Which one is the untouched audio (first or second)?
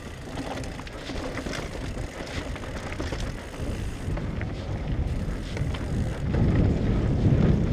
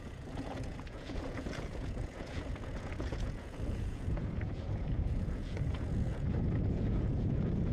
first